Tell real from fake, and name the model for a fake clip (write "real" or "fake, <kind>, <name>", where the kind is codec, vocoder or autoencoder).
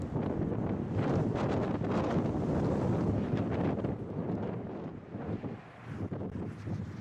real